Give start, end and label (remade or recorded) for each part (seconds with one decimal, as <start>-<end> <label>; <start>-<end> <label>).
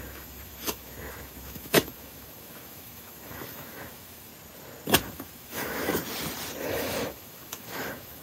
0.0-4.3 remade; 4.3-5.0 recorded; 5.0-5.9 remade; 5.9-6.6 recorded; 6.6-8.2 remade